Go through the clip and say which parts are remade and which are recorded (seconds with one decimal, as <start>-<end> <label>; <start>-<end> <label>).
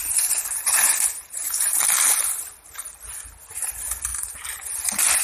0.0-3.1 remade; 3.1-4.1 recorded; 4.1-5.2 remade